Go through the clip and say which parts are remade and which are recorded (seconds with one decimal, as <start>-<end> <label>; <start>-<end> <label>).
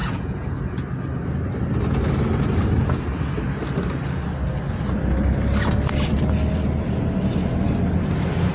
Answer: 0.0-0.6 remade; 0.6-8.5 recorded